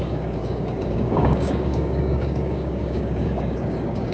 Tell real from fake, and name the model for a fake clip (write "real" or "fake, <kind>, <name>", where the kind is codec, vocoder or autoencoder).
fake, codec, DAC